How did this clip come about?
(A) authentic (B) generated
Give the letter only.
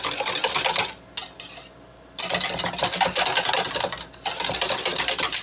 A